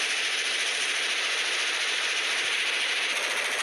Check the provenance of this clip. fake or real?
real